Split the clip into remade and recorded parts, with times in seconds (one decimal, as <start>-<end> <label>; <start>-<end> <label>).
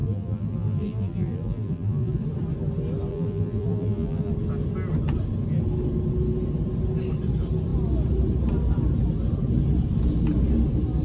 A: 0.0-2.2 remade; 2.2-3.1 recorded; 3.1-4.3 remade; 4.3-11.0 recorded